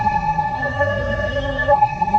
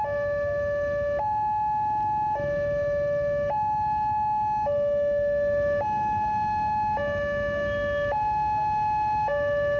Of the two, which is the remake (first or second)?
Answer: first